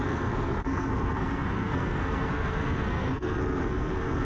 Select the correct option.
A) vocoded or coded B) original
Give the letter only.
A